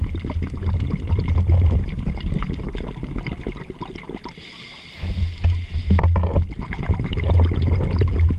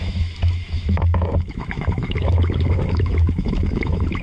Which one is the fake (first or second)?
second